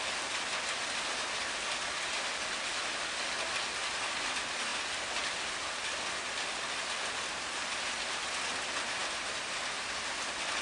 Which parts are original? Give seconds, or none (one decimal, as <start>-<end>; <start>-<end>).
0.0-10.6